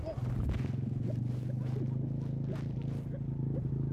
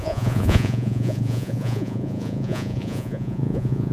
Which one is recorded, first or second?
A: first